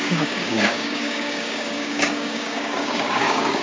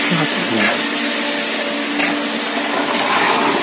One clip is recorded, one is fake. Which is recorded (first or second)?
second